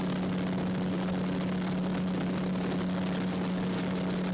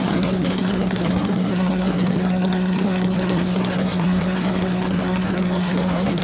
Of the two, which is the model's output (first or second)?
second